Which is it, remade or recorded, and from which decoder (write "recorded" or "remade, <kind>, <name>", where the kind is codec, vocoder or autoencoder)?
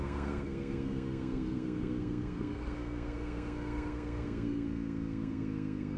remade, codec, SNAC